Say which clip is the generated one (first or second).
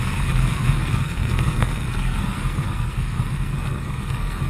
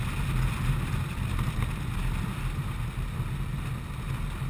first